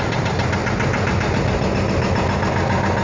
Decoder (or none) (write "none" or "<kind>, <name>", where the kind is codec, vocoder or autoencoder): none